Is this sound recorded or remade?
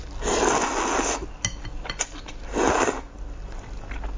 recorded